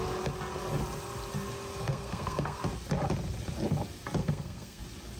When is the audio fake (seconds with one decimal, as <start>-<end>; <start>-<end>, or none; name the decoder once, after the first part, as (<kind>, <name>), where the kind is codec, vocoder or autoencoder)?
1.8-2.6 (codec, SNAC); 4.2-4.8

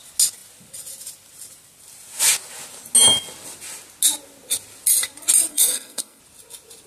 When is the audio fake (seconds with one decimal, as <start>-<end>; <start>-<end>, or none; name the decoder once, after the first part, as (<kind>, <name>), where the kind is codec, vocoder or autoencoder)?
5.5-6.2 (codec, SNAC)

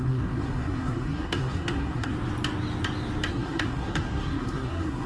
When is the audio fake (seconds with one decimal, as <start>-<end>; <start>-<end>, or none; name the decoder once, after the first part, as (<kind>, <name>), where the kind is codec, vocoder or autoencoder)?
0.0-2.1 (codec, SNAC); 3.3-5.1